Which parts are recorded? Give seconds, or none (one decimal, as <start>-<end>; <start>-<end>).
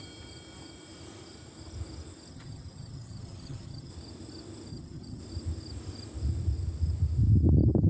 0.0-2.3; 3.9-4.7; 5.2-7.9